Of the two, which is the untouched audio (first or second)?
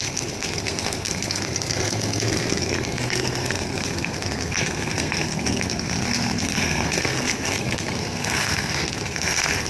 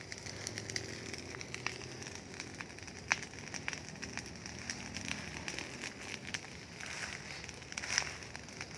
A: second